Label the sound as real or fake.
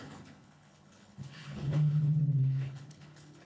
fake